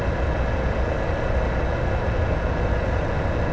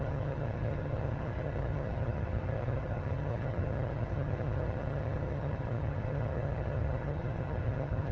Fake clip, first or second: second